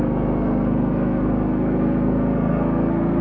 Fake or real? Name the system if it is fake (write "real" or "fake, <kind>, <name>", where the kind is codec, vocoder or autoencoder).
fake, codec, SNAC